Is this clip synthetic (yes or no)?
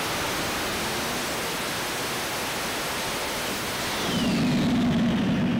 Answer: no